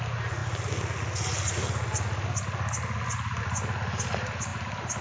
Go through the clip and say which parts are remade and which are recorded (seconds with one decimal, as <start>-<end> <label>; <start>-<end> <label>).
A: 0.0-5.0 recorded